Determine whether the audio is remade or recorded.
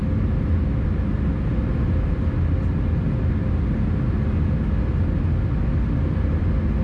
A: recorded